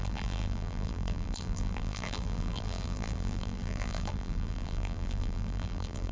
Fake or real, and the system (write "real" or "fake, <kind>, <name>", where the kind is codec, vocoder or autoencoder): fake, vocoder, BigVGAN v2